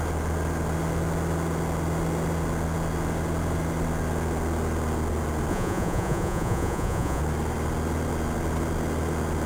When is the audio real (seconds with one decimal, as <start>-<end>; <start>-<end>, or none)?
0.0-5.5; 7.2-9.5

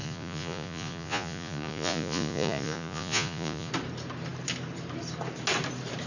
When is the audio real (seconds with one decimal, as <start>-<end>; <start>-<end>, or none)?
3.7-6.1